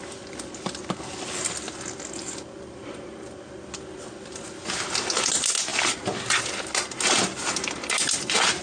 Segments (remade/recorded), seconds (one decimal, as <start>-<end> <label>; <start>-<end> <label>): 0.0-8.6 recorded